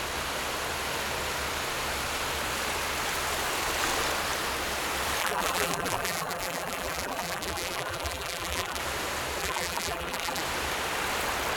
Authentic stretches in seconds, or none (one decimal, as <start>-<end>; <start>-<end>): 0.0-5.2; 8.8-9.4; 10.4-11.6